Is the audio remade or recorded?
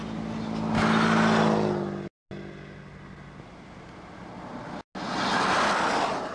recorded